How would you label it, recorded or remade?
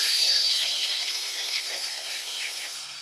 remade